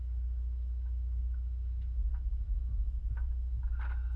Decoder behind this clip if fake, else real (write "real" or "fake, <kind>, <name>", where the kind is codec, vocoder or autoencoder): real